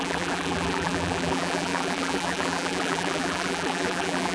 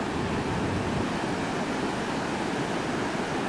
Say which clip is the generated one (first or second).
first